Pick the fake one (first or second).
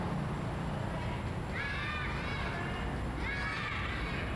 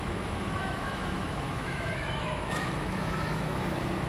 second